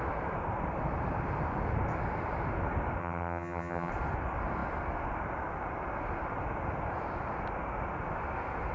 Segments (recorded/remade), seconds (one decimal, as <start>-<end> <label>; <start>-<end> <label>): 0.0-3.0 recorded; 3.0-3.9 remade; 3.9-8.7 recorded